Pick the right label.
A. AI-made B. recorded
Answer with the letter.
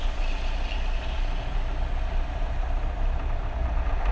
B